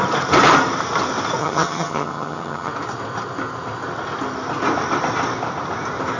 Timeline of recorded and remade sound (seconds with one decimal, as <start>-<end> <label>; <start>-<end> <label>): 0.0-1.4 recorded; 1.4-2.7 remade; 2.7-6.2 recorded